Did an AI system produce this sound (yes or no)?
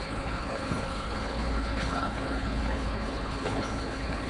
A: yes